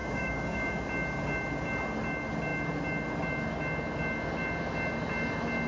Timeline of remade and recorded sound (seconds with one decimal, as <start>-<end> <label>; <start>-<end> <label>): 0.0-0.7 remade; 0.7-5.7 recorded